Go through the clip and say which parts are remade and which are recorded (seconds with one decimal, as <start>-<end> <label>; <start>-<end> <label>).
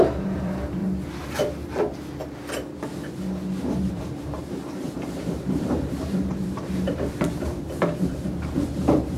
0.0-0.8 remade; 0.8-3.9 recorded; 3.9-9.2 remade